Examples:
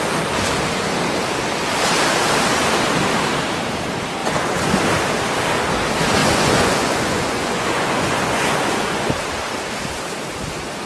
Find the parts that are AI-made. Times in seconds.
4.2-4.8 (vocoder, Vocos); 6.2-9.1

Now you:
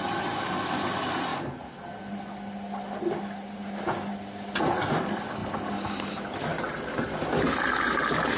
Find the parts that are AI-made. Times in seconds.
none

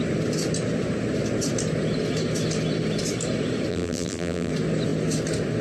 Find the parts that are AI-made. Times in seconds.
3.7-4.5 (vocoder, BigVGAN v2)

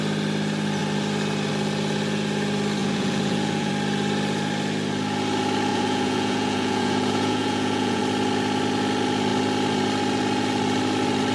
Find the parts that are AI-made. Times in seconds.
2.8-3.7 (vocoder, Vocos); 5.7-8.0